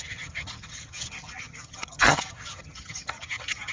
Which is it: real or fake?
fake